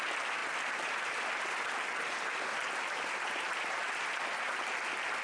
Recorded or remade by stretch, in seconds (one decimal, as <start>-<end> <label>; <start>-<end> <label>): 0.0-5.2 remade